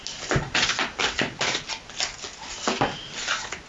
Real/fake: real